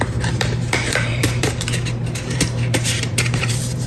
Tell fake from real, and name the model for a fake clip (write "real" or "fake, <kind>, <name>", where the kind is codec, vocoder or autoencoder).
fake, vocoder, BigVGAN v2